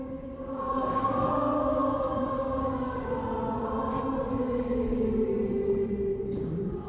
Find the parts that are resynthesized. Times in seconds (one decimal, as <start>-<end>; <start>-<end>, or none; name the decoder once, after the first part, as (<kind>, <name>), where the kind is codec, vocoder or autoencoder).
0.0-3.2 (codec, DAC); 4.3-5.3; 6.2-6.9